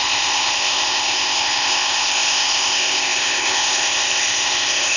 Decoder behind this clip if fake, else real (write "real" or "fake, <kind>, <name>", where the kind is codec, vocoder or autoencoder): fake, codec, ZipCodec